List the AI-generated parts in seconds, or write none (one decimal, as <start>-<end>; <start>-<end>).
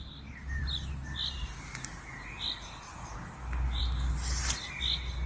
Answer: none